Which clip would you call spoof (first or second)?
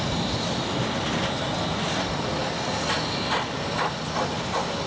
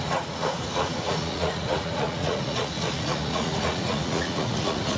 second